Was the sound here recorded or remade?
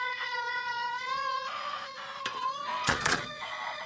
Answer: remade